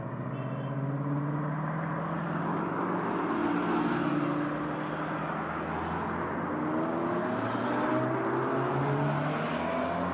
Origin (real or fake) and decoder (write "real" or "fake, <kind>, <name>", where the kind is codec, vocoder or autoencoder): real